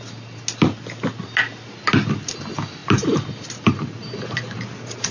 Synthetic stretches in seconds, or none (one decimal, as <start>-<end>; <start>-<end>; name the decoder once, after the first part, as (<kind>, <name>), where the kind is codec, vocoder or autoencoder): 2.8-5.1 (vocoder, BigVGAN v2)